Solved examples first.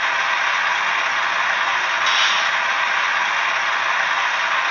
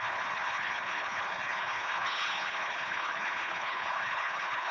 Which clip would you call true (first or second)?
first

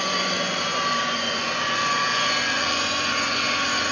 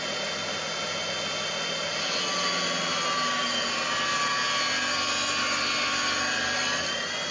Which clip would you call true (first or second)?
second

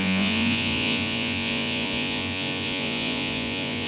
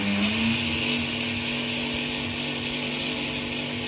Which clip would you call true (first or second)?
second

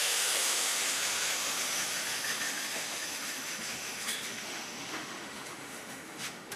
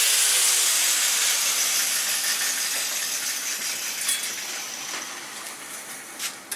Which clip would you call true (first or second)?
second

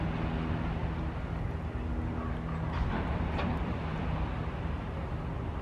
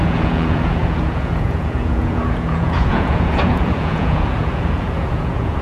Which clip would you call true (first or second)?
first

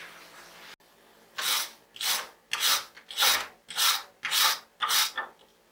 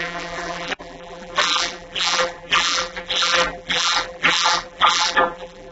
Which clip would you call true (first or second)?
first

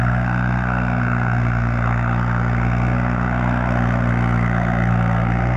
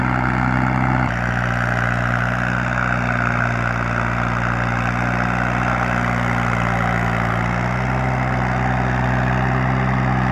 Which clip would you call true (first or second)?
second